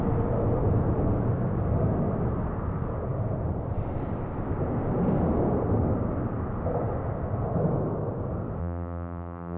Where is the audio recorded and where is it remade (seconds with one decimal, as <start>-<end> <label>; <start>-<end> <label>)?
0.0-8.6 recorded; 8.6-9.6 remade